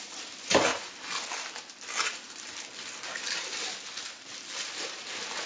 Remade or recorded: recorded